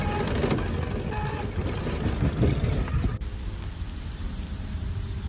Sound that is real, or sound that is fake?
real